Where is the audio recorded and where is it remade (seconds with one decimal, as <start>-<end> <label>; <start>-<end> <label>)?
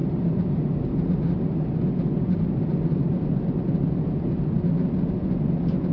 0.0-5.9 recorded